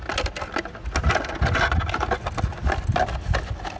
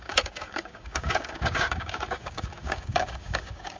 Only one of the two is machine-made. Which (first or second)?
second